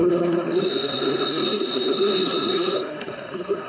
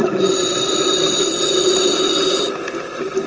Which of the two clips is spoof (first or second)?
first